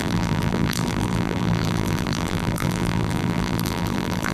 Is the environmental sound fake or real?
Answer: fake